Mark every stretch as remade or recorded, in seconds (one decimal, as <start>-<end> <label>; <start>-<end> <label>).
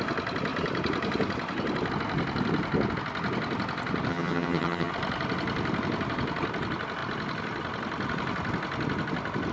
0.0-4.1 recorded; 4.1-4.9 remade; 4.9-9.5 recorded